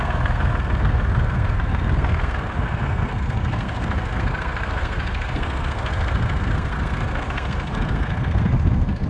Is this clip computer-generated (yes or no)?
yes